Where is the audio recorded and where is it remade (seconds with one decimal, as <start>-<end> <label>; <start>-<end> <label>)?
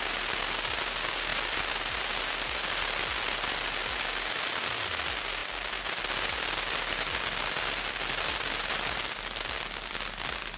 0.0-10.6 recorded